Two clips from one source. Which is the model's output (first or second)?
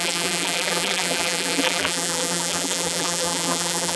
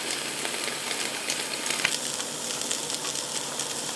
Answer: first